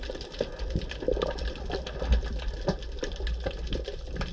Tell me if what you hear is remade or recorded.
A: recorded